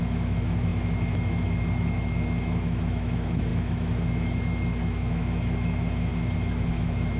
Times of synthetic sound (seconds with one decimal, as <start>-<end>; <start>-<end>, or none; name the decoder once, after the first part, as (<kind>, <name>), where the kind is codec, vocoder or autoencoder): 0.0-7.2 (autoencoder, DAC-VAE)